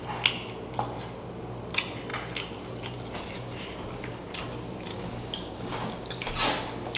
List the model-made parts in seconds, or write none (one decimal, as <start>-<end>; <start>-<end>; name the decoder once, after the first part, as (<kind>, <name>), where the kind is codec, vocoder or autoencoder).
4.9-6.3 (codec, DAC)